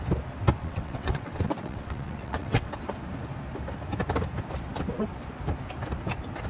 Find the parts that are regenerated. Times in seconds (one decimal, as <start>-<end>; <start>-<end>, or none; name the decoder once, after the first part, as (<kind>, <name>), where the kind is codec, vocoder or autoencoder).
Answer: 0.6-2.7 (vocoder, WaveNeXt)